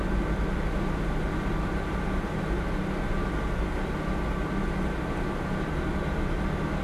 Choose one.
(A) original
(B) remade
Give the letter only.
A